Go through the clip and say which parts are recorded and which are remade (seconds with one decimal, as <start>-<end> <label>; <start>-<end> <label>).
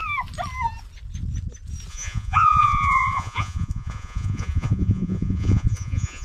0.0-1.9 recorded; 1.9-6.2 remade